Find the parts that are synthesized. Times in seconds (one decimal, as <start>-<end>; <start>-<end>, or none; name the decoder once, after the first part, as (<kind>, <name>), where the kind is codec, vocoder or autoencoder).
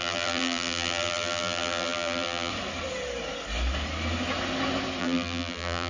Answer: 0.0-2.5 (vocoder, BigVGAN v2); 5.0-5.9